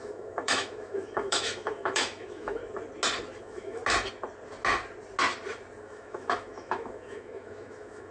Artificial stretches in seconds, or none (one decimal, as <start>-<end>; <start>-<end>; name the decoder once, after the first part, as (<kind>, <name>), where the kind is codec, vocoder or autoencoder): 0.0-2.6 (autoencoder, DAC-VAE); 3.4-3.8; 5.8-8.1